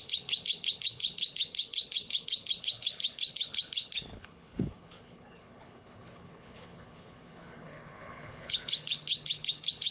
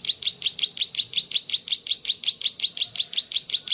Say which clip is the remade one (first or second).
first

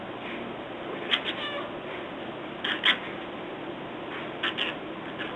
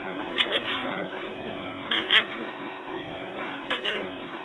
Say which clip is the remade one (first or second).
second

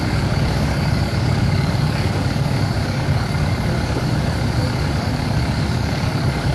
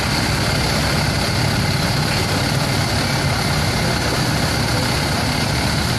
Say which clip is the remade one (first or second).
first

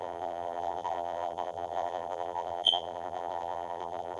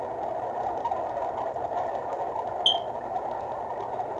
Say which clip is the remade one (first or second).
first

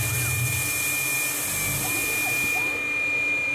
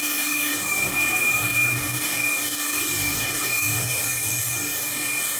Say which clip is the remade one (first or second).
second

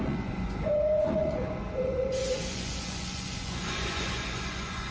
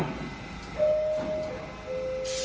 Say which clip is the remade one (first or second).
first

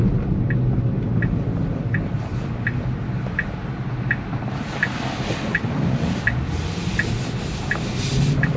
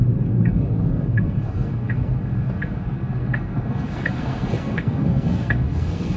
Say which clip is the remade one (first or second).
second